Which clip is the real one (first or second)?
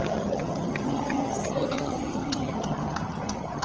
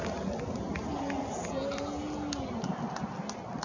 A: second